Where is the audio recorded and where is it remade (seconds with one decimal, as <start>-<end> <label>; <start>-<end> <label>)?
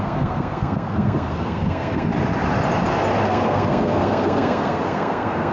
0.0-2.1 remade; 2.1-3.3 recorded; 3.3-5.5 remade